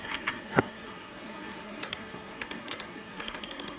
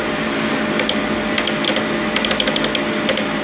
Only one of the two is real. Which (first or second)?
second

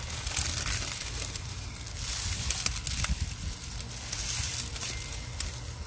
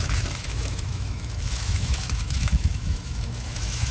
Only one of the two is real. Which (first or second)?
first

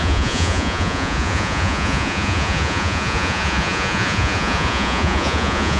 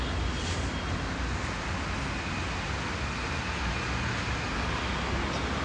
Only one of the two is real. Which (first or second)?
second